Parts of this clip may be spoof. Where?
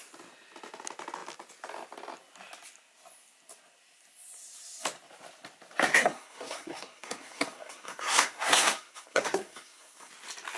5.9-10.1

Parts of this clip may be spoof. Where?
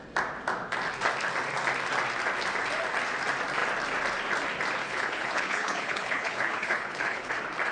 4.8-7.3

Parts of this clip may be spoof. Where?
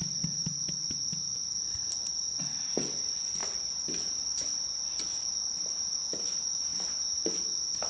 none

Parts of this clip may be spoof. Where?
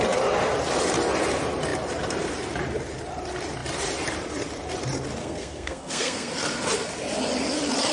5.2-6.3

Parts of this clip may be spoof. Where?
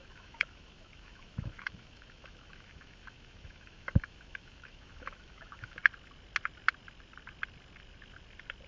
0.0-5.8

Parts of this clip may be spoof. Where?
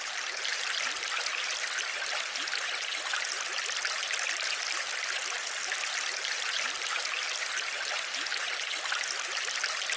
none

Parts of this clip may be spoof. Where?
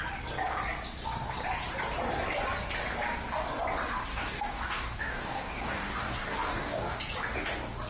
4.1-7.0